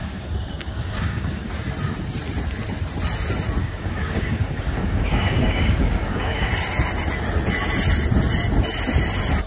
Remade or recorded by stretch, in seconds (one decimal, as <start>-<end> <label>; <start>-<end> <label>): 0.0-1.5 remade; 1.5-3.6 recorded; 3.6-6.5 remade; 6.5-9.5 recorded